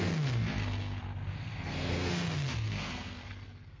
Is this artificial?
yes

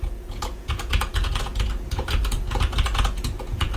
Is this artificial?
yes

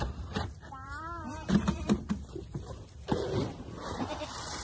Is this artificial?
yes